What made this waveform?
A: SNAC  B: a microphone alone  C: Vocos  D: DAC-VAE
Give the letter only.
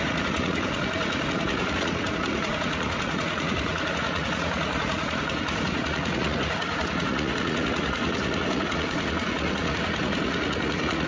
C